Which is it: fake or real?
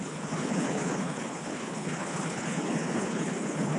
fake